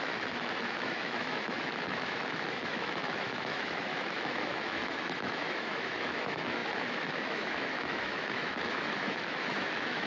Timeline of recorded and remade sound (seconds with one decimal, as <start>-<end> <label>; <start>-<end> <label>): 0.0-10.1 remade

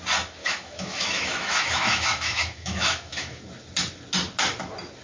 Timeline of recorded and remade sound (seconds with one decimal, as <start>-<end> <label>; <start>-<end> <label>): 0.0-0.4 recorded; 0.4-3.4 remade; 3.4-5.0 recorded